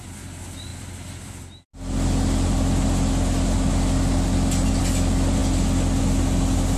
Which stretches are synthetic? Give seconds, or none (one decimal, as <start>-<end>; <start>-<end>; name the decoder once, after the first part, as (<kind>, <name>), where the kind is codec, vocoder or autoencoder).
none